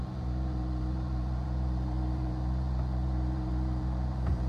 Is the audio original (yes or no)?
no